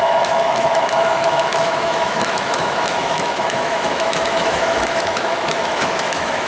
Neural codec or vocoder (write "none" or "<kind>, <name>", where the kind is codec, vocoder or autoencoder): autoencoder, DAC-VAE